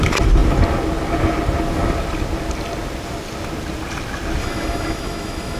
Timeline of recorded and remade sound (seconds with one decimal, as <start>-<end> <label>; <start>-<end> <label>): 0.0-4.4 recorded; 4.4-5.6 remade